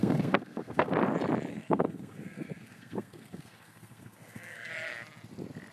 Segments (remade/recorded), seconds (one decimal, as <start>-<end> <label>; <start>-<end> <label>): 0.0-0.9 remade; 0.9-1.5 recorded; 1.5-4.7 remade; 4.7-5.7 recorded